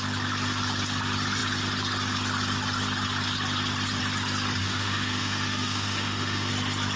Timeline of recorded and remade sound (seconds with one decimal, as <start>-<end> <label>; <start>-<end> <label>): 0.0-4.6 recorded; 4.6-6.5 remade; 6.5-7.0 recorded